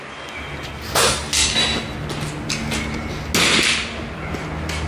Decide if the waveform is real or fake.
real